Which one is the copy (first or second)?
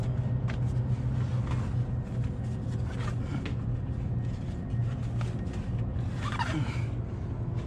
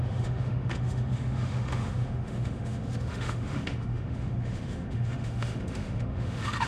second